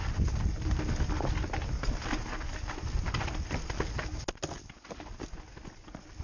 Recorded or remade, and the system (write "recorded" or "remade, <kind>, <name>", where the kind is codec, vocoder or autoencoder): recorded